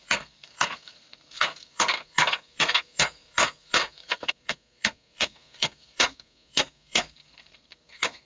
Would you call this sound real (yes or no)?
no